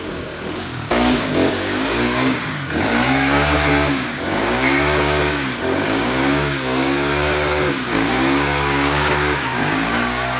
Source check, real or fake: fake